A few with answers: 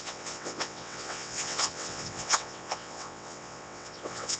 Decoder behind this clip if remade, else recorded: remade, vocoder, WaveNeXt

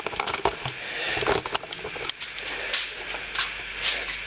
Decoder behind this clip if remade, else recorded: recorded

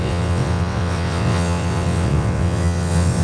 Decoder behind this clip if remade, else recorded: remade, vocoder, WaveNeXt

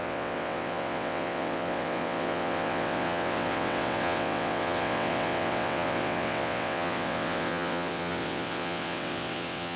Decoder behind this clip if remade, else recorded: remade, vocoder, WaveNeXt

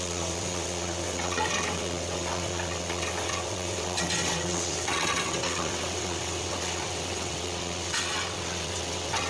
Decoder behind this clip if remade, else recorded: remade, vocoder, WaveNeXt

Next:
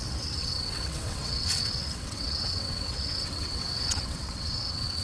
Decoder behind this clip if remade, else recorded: remade, vocoder, WaveNeXt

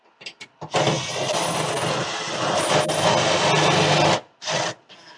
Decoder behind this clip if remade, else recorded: recorded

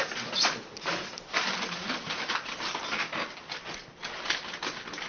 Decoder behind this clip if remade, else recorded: recorded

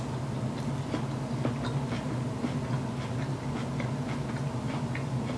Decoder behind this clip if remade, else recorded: recorded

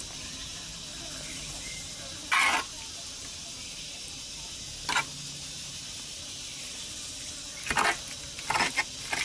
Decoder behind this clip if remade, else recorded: recorded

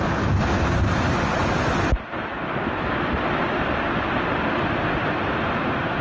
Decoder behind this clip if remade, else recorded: recorded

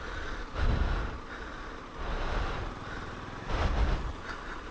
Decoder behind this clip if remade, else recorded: recorded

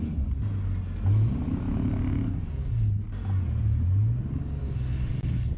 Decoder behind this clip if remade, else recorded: recorded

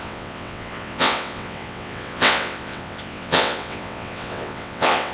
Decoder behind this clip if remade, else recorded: remade, vocoder, WaveNeXt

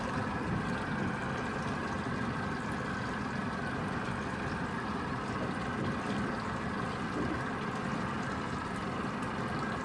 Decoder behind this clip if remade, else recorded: recorded